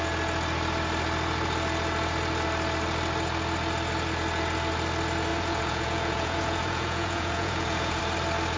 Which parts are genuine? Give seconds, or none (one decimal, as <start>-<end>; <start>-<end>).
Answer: 0.0-5.3; 8.0-8.6